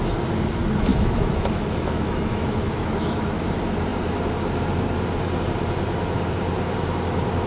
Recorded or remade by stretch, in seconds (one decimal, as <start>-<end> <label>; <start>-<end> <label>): 0.0-0.9 recorded; 0.9-3.4 remade; 3.4-7.5 recorded